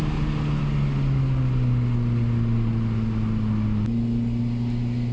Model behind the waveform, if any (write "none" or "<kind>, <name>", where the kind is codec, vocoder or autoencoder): none